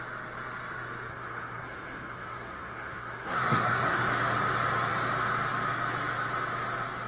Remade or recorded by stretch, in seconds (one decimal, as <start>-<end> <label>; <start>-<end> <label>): 0.0-1.1 recorded; 1.1-4.0 remade; 4.0-7.1 recorded